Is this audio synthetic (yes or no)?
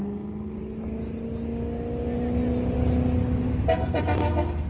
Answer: no